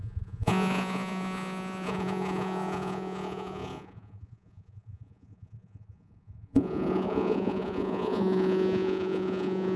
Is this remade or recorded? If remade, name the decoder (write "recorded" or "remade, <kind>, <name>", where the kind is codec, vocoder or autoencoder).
remade, vocoder, Vocos